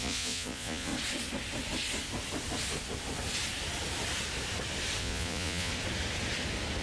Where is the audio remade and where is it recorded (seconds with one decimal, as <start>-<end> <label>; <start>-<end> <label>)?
0.0-0.9 remade; 0.9-5.0 recorded; 5.0-5.7 remade; 5.7-6.8 recorded